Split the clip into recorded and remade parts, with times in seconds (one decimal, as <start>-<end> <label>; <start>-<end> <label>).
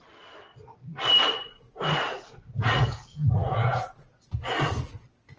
0.0-1.4 recorded; 1.4-4.1 remade; 4.1-5.4 recorded